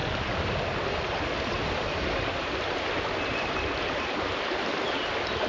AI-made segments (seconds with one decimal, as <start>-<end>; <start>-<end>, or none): none